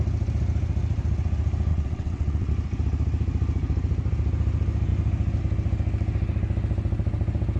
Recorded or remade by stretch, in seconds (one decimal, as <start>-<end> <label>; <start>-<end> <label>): 0.0-1.7 recorded; 1.7-2.5 remade; 2.5-7.6 recorded